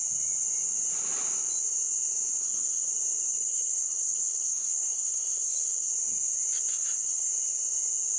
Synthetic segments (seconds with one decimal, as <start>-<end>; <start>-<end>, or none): 2.4-2.9; 3.3-5.9; 6.7-7.3